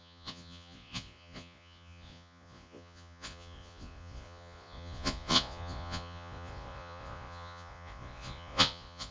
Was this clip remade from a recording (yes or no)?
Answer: yes